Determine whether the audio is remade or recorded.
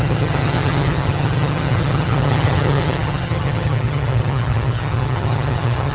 remade